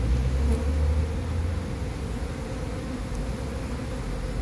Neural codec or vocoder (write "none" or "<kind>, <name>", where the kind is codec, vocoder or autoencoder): none